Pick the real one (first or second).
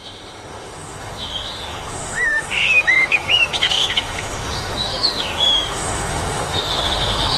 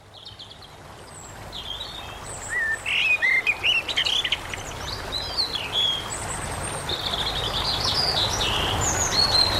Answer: second